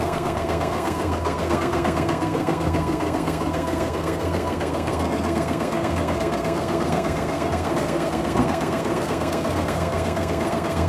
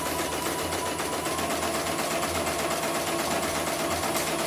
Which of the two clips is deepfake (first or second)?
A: first